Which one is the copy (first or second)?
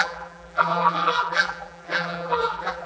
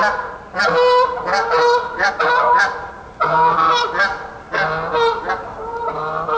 first